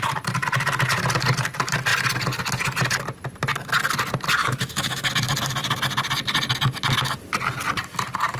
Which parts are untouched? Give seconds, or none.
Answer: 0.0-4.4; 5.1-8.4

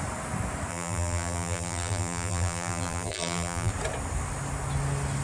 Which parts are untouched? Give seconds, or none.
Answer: 0.0-0.7; 3.7-5.2